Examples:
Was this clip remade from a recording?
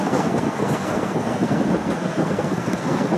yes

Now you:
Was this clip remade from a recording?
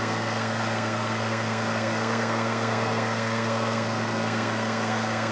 yes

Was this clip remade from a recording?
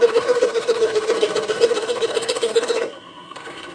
yes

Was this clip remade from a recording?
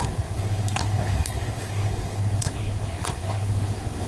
yes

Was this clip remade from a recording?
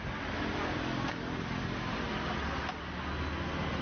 no